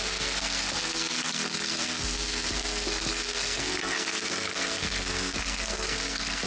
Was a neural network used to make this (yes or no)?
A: yes